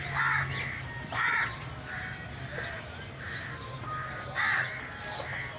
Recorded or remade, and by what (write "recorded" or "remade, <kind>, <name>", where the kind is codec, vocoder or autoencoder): recorded